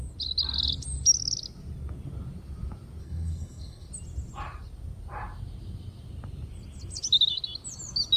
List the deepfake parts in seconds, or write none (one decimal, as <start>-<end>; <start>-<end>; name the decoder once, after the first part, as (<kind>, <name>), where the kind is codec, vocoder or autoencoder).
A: 3.0-3.9 (codec, SNAC)